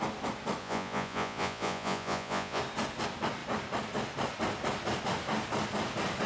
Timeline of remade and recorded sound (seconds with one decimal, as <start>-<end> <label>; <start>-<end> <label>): 0.0-0.6 recorded; 0.6-2.6 remade; 2.6-6.3 recorded